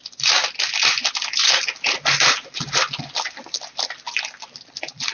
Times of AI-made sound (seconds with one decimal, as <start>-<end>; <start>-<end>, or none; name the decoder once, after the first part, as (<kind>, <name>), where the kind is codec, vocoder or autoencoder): none